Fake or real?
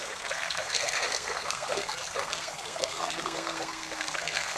fake